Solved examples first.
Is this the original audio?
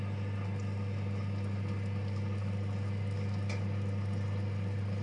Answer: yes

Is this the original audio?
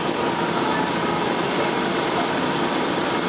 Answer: yes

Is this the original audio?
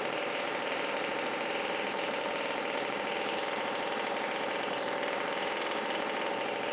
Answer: no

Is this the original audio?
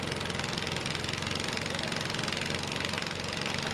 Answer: yes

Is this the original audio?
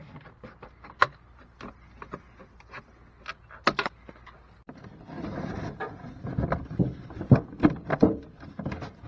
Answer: yes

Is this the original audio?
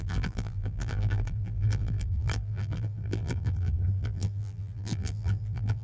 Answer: no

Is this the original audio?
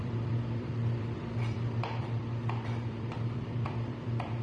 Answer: no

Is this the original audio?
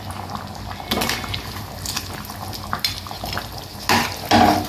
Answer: yes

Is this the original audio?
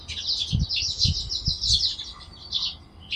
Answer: yes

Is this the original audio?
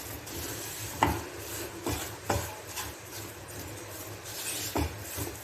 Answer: yes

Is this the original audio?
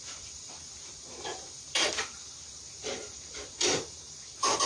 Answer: no